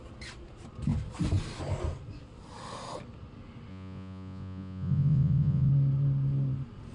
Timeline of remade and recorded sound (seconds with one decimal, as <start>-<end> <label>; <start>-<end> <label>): 0.0-3.7 recorded; 3.7-5.7 remade; 5.7-6.9 recorded